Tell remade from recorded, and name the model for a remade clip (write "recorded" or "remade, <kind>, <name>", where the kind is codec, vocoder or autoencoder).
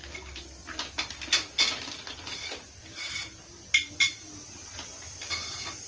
recorded